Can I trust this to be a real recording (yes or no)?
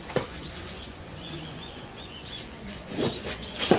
no